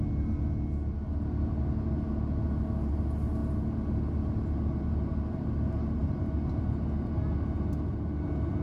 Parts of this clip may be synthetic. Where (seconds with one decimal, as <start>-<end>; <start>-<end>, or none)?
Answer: none